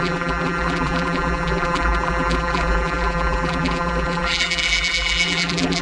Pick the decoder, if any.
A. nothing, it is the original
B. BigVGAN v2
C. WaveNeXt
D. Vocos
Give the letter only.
B